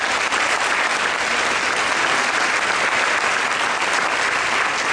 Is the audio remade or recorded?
recorded